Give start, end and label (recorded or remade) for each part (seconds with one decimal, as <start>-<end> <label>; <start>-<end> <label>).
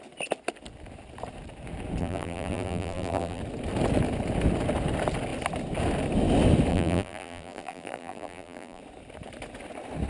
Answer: 0.0-2.0 recorded; 2.0-3.4 remade; 3.4-6.7 recorded; 6.7-8.8 remade; 8.8-10.1 recorded